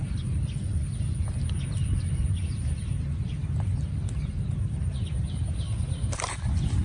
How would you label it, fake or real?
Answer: real